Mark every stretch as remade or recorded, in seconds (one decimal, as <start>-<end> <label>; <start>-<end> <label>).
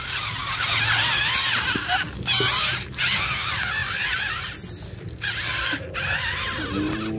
0.0-7.2 recorded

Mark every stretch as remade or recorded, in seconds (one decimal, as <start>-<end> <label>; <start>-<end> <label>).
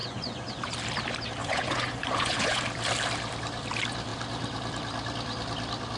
0.0-0.7 remade; 0.7-1.4 recorded; 1.4-2.6 remade; 2.6-6.0 recorded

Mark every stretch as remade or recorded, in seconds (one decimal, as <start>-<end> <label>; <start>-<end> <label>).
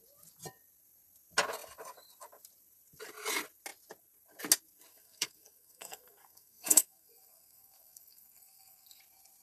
0.0-4.9 recorded; 4.9-9.0 remade; 9.0-9.4 recorded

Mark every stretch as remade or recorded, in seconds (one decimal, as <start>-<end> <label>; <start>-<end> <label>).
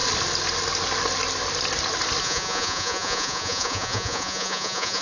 0.0-2.2 recorded; 2.2-5.0 remade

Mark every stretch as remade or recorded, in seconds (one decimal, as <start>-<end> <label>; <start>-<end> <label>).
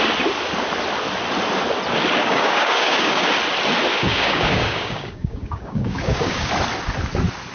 0.0-2.2 recorded; 2.2-3.3 remade; 3.3-3.9 recorded; 3.9-6.5 remade; 6.5-7.5 recorded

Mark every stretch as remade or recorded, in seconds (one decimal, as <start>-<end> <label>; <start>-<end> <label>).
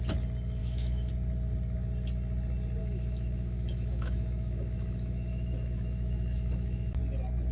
0.0-0.6 recorded; 0.6-1.1 remade; 1.1-2.8 recorded; 2.8-7.0 remade; 7.0-7.5 recorded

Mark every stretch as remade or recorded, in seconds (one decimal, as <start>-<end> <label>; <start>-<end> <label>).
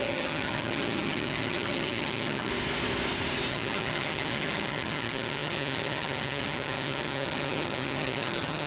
0.0-2.5 remade; 2.5-3.5 recorded; 3.5-8.7 remade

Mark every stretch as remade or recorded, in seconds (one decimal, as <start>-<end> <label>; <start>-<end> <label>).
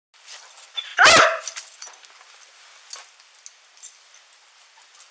0.0-5.1 recorded